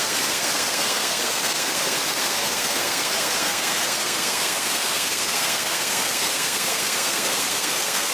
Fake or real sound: fake